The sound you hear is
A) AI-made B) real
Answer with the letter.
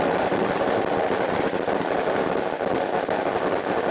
B